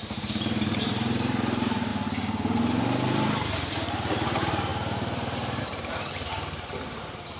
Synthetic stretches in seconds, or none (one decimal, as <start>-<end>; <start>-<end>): 0.0-1.9; 3.1-7.4